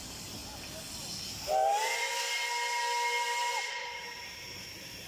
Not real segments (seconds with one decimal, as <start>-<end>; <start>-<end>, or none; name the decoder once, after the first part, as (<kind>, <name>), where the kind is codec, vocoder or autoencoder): 0.0-0.4 (vocoder, BigVGAN v2); 3.5-5.1